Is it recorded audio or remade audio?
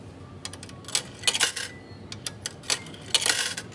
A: recorded